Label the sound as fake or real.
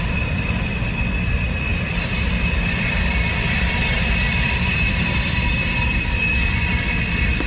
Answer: fake